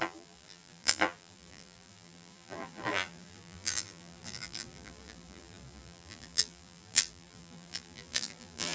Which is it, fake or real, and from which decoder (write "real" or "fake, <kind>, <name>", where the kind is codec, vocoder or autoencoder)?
fake, vocoder, BigVGAN v2